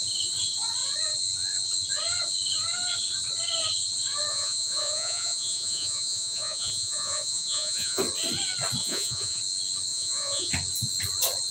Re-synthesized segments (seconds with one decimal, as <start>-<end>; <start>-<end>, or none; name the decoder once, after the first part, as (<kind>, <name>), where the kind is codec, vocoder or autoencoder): 4.3-8.0 (vocoder, Vocos); 8.8-9.4; 9.9-10.5